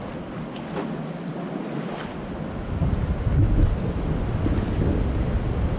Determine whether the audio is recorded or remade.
recorded